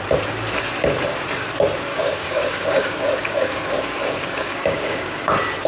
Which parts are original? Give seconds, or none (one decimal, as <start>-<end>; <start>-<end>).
0.0-1.9; 5.3-5.7